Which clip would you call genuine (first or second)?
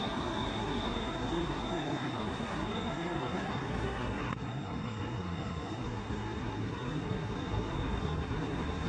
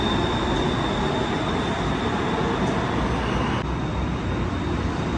second